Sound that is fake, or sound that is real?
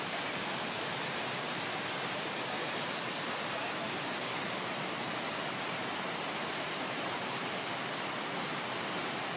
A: real